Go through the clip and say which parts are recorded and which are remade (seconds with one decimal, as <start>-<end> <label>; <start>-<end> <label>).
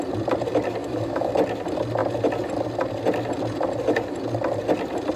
0.0-0.8 recorded; 0.8-1.3 remade; 1.3-5.2 recorded